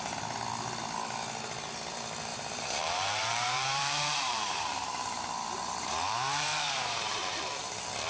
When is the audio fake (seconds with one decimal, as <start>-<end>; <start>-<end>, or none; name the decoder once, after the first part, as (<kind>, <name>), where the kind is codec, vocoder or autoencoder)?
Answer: 2.3-7.2 (vocoder, BigVGAN v2)